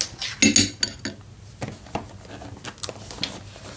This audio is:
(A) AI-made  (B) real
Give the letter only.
B